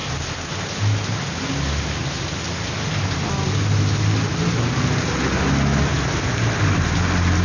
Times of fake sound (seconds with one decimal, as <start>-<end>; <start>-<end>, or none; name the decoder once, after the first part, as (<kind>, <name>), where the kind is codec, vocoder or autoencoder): none